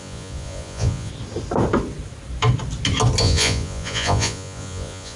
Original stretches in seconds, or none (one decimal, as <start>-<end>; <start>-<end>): 1.1-3.2